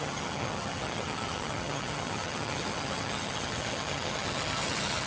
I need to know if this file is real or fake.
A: fake